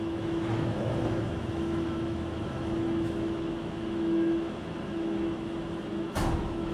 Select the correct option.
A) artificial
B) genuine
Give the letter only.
A